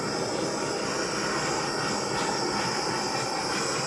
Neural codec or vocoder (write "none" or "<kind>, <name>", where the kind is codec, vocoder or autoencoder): none